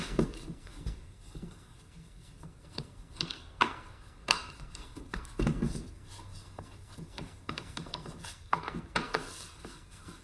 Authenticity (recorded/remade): remade